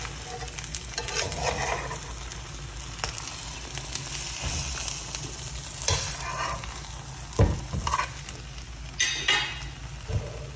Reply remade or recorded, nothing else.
recorded